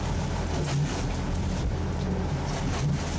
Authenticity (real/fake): real